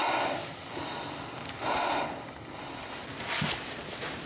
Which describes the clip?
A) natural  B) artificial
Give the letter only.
A